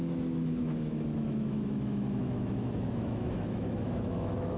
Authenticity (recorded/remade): remade